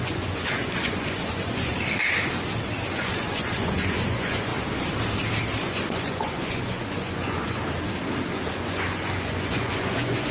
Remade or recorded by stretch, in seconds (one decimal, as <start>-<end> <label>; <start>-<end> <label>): 0.0-1.7 remade; 1.7-2.9 recorded; 2.9-4.5 remade; 4.5-5.6 recorded; 5.6-7.6 remade; 7.6-8.5 recorded; 8.5-10.3 remade